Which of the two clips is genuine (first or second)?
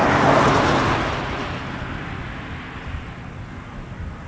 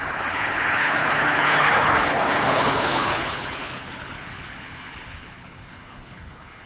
first